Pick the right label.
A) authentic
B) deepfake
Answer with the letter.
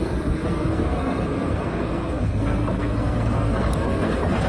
B